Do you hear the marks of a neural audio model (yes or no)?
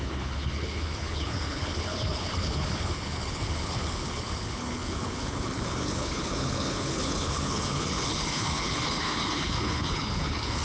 yes